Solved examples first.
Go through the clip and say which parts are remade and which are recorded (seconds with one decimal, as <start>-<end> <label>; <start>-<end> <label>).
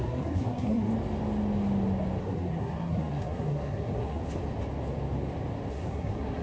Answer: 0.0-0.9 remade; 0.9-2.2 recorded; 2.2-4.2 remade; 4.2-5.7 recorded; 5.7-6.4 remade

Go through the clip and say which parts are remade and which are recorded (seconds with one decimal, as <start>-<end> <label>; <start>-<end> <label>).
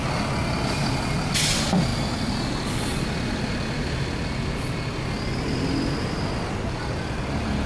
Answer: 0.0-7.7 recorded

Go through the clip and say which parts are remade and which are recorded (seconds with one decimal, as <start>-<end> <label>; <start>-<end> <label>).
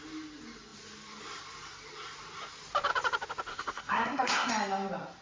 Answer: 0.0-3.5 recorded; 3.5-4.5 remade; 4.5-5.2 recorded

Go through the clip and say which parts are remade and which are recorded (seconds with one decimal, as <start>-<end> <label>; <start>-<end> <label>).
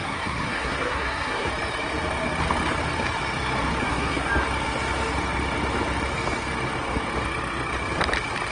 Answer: 0.0-1.5 remade; 1.5-3.8 recorded; 3.8-4.3 remade; 4.3-8.5 recorded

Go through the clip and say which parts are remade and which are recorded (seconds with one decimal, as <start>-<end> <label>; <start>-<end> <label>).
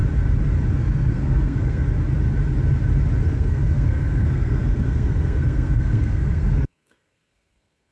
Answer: 0.0-0.7 recorded; 0.7-1.8 remade; 1.8-3.2 recorded; 3.2-7.9 remade